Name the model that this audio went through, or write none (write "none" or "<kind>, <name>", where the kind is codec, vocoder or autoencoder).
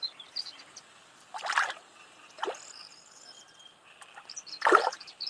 vocoder, BigVGAN v2